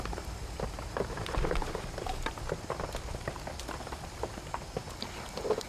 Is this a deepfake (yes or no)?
no